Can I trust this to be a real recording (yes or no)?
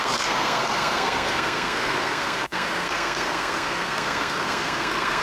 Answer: no